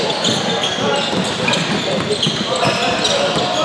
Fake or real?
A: real